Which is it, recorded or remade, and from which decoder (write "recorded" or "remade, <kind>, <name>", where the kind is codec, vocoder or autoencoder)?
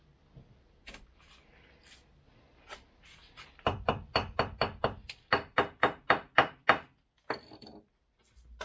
recorded